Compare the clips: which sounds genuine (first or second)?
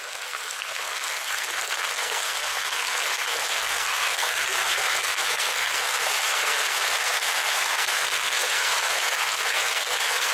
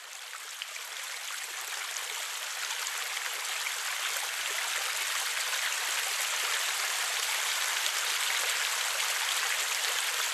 second